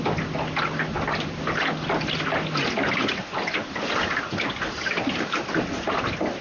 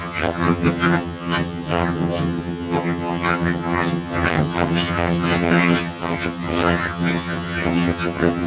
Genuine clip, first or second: first